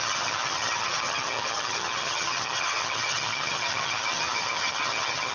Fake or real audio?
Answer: fake